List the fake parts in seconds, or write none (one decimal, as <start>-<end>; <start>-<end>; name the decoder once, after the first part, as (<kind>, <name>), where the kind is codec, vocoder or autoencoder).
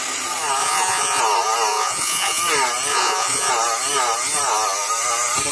0.6-1.2 (vocoder, Vocos); 1.7-2.4; 2.9-3.5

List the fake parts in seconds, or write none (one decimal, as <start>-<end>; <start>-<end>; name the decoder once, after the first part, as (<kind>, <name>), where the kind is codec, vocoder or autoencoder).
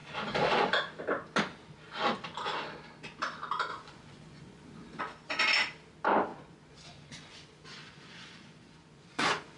3.7-5.0 (vocoder, Vocos); 6.3-9.6